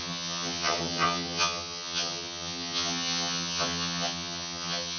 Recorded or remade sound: remade